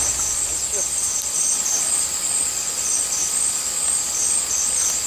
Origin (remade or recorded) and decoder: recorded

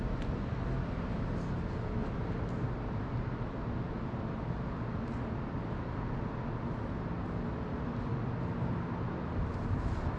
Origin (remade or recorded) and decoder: recorded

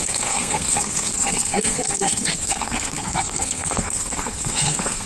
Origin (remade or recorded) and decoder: remade, codec, SNAC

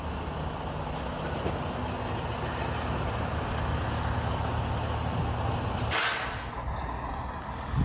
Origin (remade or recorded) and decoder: recorded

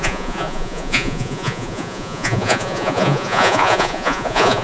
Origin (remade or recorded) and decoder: remade, vocoder, Vocos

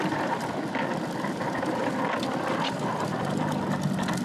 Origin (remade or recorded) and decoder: recorded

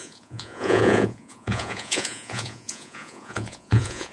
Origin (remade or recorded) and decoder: remade, vocoder, Vocos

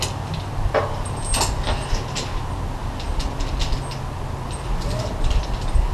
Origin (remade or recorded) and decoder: recorded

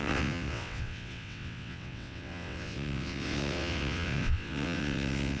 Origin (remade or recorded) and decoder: remade, vocoder, WaveNeXt